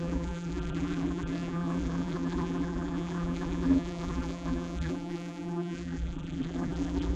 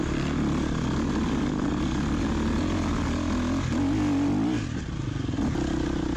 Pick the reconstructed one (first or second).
first